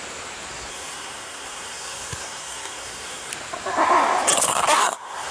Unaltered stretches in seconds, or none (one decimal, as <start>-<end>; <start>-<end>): 0.0-0.7; 3.3-4.5